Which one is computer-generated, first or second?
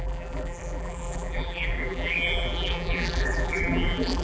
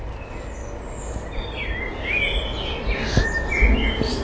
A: first